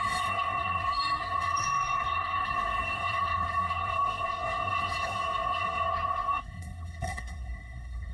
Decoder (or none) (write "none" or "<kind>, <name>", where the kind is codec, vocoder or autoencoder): codec, SNAC